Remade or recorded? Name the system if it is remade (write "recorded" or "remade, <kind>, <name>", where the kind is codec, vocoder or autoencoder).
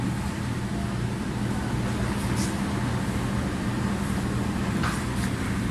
recorded